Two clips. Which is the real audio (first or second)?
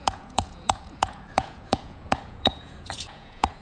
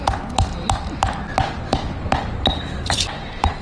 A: second